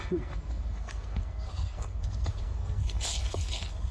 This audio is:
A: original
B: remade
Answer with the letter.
B